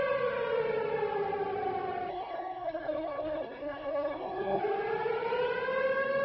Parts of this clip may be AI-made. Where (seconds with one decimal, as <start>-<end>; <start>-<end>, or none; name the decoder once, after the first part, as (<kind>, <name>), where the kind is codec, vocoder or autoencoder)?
2.1-4.6 (codec, SNAC)